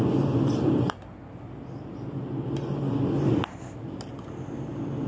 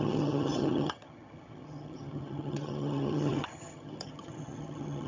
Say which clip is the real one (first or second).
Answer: first